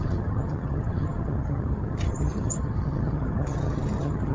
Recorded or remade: remade